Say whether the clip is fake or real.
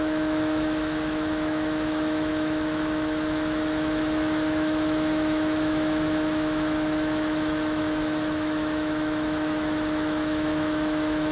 fake